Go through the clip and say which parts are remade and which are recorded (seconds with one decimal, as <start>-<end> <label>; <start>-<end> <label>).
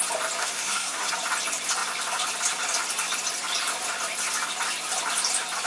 0.0-0.4 recorded; 0.4-1.1 remade; 1.1-5.7 recorded